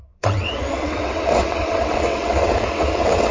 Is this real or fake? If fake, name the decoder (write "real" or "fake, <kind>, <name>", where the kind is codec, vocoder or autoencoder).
fake, vocoder, WaveNeXt